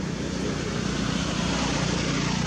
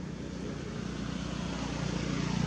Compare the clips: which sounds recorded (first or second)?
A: second